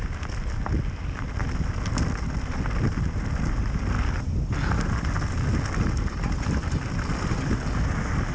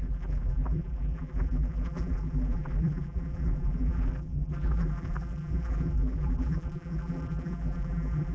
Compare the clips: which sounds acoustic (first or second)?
first